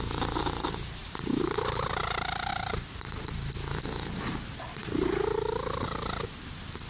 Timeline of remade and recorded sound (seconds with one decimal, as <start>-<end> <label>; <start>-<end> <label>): 0.0-6.9 recorded